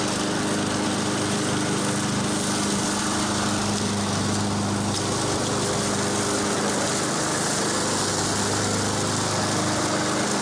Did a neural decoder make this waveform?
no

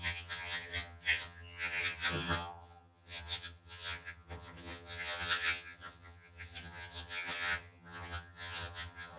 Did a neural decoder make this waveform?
yes